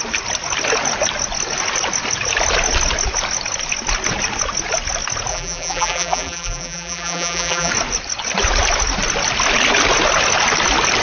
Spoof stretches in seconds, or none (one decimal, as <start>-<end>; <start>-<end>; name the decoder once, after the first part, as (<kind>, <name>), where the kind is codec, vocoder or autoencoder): 5.3-7.7 (vocoder, BigVGAN v2)